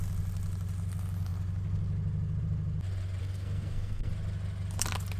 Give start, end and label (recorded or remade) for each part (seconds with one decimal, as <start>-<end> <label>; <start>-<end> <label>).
0.0-3.2 recorded; 3.2-4.1 remade; 4.1-5.2 recorded

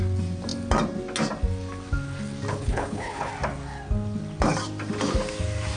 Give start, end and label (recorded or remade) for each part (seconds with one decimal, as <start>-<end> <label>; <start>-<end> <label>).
0.0-2.5 recorded; 2.5-3.3 remade; 3.3-5.8 recorded